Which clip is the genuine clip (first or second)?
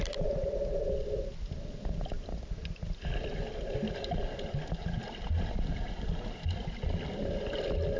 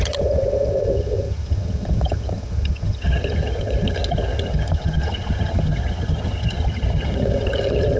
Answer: first